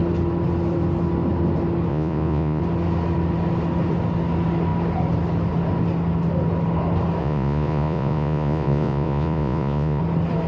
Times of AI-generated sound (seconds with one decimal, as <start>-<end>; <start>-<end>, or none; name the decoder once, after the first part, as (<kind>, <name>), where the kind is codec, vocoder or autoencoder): 1.9-2.6 (vocoder, Vocos); 7.2-10.0